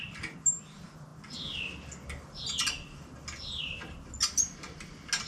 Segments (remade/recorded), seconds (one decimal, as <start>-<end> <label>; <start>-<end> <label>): 0.0-5.3 recorded